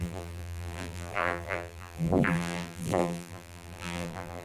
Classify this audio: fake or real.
fake